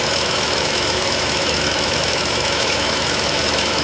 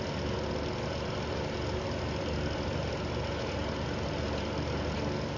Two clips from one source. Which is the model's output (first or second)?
first